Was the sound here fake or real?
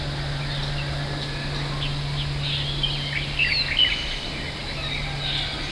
real